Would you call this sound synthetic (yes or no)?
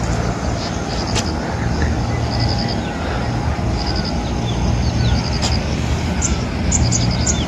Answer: no